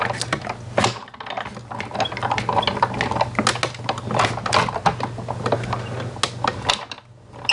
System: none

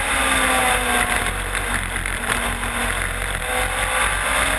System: none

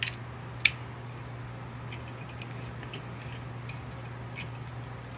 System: none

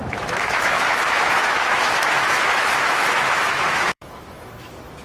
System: autoencoder, DAC-VAE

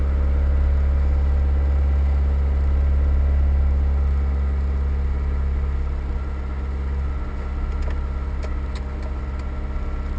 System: none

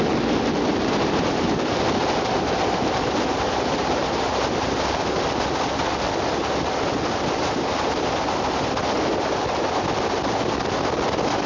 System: none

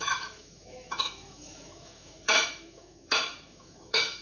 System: autoencoder, DAC-VAE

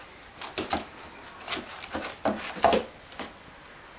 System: none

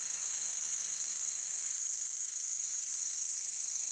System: codec, SNAC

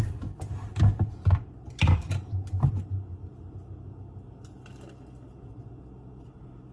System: none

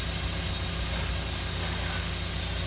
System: none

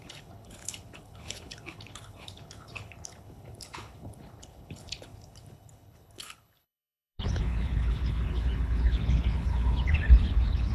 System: codec, HILCodec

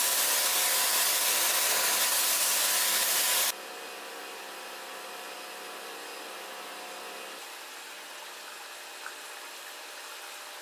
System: none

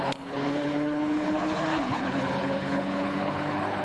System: codec, HILCodec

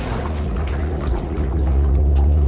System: vocoder, Vocos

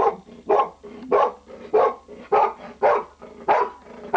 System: none